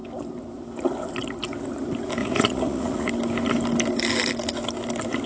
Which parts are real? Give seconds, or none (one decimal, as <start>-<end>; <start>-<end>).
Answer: 0.0-2.2; 3.1-5.3